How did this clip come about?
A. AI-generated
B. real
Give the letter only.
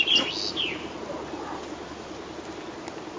B